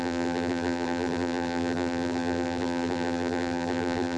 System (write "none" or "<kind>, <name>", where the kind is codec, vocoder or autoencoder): vocoder, BigVGAN v2